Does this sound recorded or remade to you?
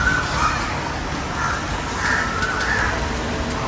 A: recorded